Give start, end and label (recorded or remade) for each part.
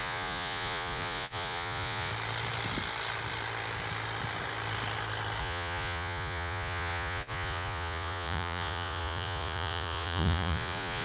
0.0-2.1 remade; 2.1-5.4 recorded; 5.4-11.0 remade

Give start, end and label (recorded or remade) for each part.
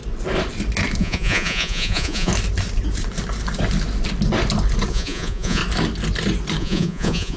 0.0-1.0 recorded; 1.0-2.3 remade; 2.3-4.9 recorded; 4.9-5.6 remade; 5.6-6.6 recorded; 6.6-7.4 remade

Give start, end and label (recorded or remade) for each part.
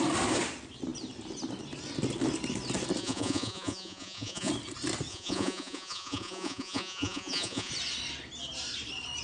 0.0-3.0 recorded; 3.0-4.5 remade; 4.5-5.1 recorded; 5.1-7.7 remade; 7.7-9.2 recorded